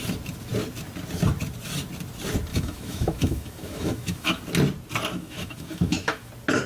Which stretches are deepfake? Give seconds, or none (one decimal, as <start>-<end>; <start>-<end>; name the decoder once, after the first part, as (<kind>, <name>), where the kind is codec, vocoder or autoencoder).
2.5-4.4 (autoencoder, DAC-VAE); 5.1-6.3